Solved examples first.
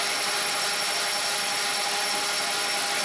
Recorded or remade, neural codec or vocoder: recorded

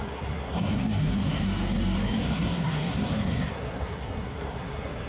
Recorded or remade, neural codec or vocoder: remade, codec, SNAC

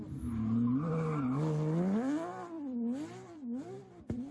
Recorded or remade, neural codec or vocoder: recorded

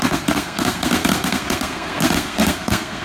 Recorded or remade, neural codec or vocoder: remade, codec, SNAC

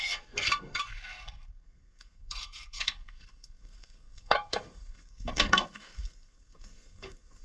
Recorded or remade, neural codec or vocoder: remade, codec, SNAC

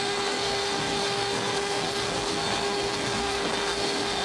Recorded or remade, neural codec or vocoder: remade, codec, SNAC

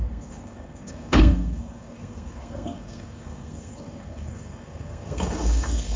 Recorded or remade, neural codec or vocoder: remade, codec, SNAC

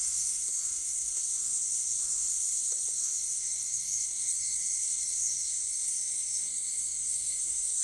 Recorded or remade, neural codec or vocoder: remade, codec, SNAC